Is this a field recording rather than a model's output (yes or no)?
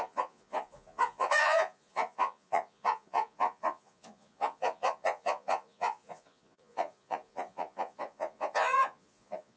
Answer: no